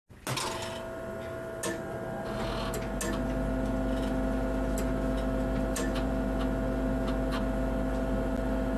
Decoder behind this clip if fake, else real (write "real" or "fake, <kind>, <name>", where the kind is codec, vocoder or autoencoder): real